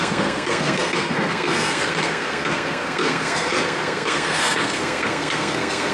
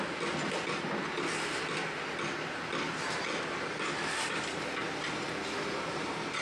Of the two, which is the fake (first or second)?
first